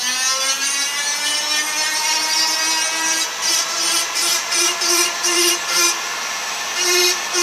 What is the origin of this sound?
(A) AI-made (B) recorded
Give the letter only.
A